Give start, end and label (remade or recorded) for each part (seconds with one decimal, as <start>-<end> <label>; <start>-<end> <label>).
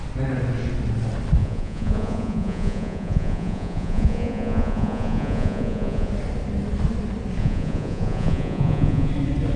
0.0-1.4 recorded; 1.4-6.1 remade; 6.1-7.4 recorded; 7.4-9.1 remade; 9.1-9.6 recorded